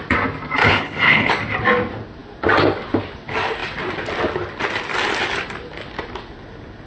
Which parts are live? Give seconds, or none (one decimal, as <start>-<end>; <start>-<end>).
0.0-0.6; 1.3-6.9